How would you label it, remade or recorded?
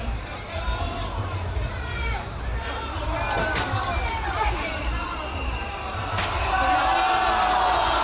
remade